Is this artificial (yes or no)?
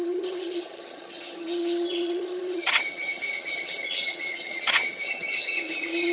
yes